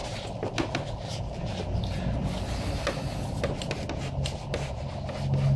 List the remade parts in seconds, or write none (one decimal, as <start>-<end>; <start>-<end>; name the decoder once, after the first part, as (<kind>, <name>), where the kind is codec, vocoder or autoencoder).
none